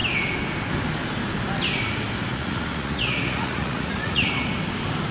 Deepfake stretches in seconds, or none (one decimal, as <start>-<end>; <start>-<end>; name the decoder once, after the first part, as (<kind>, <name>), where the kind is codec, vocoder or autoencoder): 2.3-4.3 (vocoder, Vocos)